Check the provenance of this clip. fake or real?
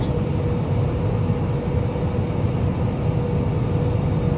real